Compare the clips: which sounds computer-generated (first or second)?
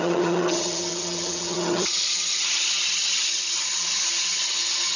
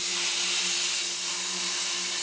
first